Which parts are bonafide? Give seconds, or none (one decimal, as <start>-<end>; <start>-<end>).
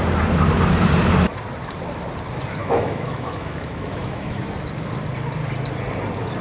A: 0.0-2.6; 4.4-6.4